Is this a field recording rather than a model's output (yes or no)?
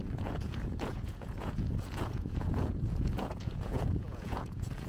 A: no